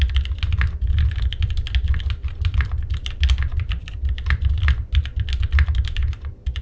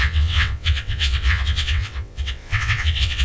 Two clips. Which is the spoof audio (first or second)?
second